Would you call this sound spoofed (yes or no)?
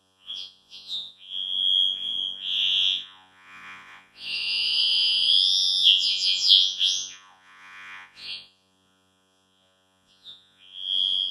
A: yes